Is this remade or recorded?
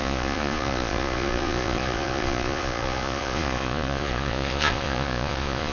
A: remade